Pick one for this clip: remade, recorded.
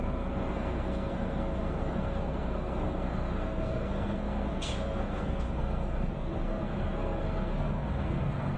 remade